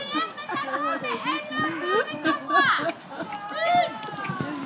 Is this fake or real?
real